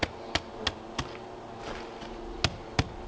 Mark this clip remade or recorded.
recorded